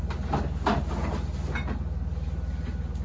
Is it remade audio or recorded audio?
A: recorded